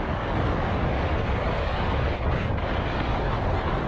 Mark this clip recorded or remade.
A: remade